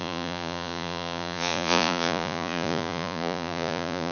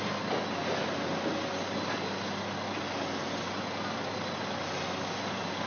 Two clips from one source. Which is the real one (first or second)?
second